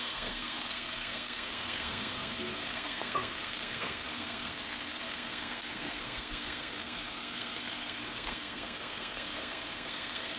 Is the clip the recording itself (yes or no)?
no